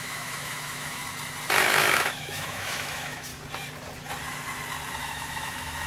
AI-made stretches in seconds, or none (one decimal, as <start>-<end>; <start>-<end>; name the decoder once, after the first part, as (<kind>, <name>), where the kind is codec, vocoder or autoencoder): 0.0-1.0 (autoencoder, DAC-VAE); 1.6-3.3; 5.0-5.9